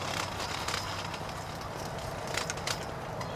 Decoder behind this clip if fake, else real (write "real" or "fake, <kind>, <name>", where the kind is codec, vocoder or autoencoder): real